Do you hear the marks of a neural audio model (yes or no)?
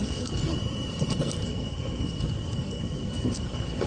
yes